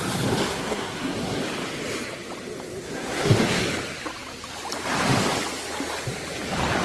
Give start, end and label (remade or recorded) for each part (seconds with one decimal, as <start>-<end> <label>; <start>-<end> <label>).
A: 0.0-0.5 recorded; 0.5-1.4 remade; 1.4-2.8 recorded; 2.8-3.6 remade; 3.6-6.8 recorded